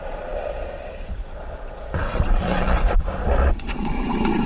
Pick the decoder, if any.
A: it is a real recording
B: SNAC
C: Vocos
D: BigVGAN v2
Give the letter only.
C